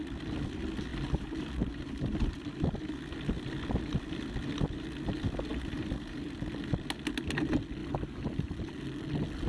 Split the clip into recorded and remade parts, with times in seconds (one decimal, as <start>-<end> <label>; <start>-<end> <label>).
0.0-0.9 recorded; 0.9-2.4 remade; 2.4-5.5 recorded; 5.5-6.7 remade; 6.7-7.8 recorded; 7.8-8.7 remade; 8.7-9.5 recorded